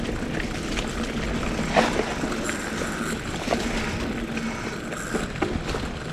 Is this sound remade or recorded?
recorded